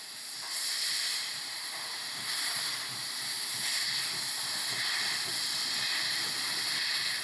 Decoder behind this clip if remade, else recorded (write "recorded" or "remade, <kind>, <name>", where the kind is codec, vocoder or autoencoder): recorded